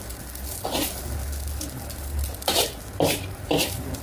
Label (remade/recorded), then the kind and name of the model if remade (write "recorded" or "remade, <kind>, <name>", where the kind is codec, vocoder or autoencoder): recorded